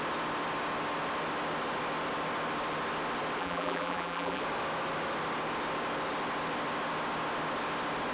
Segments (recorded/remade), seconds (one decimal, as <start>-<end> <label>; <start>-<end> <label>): 0.0-3.4 recorded; 3.4-4.4 remade; 4.4-8.1 recorded